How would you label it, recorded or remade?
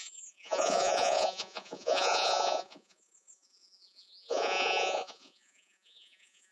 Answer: remade